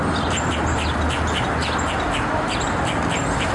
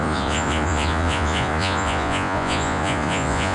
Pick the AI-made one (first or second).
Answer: second